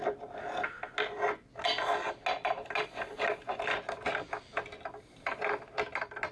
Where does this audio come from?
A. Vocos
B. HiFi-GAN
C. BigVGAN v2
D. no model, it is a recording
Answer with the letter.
D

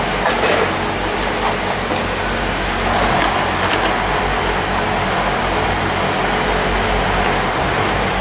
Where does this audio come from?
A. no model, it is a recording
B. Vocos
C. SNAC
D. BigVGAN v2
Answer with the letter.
A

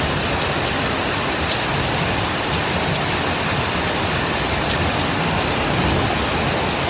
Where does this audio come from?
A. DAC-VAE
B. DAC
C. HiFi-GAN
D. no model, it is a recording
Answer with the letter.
D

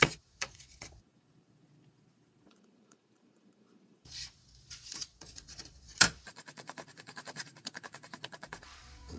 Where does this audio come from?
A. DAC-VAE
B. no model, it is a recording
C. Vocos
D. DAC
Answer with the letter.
C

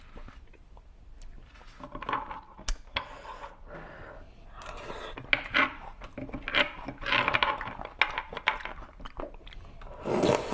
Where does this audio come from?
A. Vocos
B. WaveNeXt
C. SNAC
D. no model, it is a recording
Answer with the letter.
D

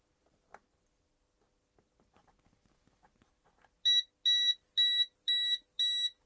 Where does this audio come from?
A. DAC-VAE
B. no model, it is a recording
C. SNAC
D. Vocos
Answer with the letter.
B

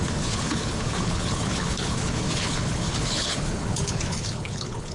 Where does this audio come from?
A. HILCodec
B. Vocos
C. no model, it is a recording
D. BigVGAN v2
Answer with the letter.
A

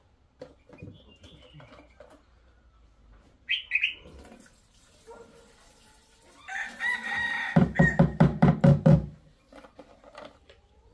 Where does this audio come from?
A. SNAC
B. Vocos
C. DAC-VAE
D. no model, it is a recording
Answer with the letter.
D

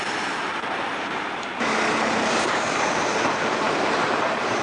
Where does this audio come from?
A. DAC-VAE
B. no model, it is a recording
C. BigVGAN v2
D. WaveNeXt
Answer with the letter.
C